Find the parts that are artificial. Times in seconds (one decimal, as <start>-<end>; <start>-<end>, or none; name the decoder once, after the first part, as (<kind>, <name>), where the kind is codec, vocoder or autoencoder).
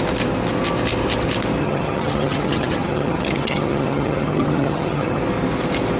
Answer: 1.6-5.2 (vocoder, HiFi-GAN)